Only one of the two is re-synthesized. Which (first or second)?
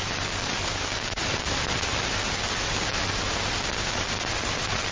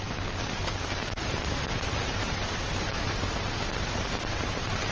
second